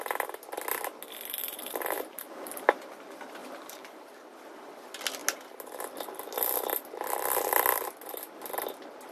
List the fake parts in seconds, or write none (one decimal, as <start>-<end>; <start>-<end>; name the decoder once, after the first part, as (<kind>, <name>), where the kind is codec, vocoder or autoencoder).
1.4-3.0 (vocoder, BigVGAN v2); 3.4-4.2